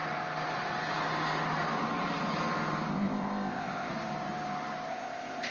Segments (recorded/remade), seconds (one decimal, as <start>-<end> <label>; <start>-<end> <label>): 0.0-2.9 recorded; 2.9-3.9 remade; 3.9-4.9 recorded; 4.9-5.5 remade

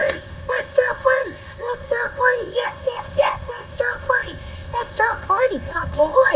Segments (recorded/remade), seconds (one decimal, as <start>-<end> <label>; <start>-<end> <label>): 0.0-6.4 remade

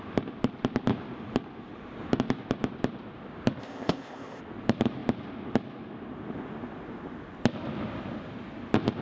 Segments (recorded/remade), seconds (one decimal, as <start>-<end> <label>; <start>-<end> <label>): 0.0-3.6 recorded; 3.6-4.4 remade; 4.4-9.0 recorded